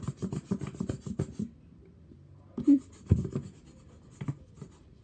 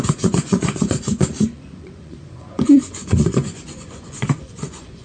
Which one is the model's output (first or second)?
second